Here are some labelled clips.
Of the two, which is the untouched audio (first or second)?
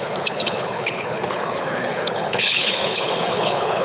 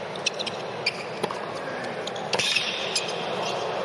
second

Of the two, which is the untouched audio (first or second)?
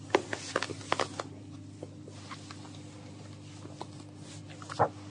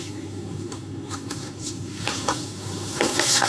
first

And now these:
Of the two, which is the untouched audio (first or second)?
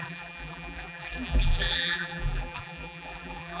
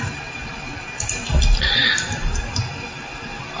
second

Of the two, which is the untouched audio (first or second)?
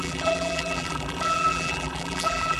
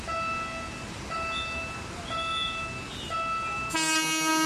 second